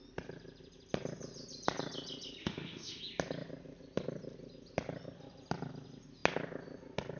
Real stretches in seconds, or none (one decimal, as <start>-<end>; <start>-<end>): 0.0-2.4; 3.0-7.2